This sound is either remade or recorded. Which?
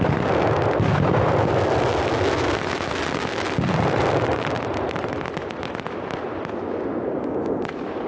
recorded